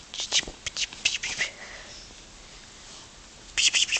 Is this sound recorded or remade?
recorded